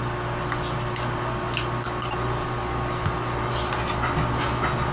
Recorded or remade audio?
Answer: recorded